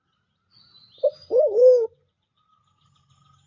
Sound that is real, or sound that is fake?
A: fake